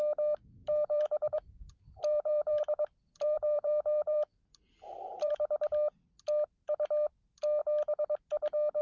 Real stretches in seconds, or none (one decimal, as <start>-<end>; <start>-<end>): 0.0-0.6; 5.3-8.8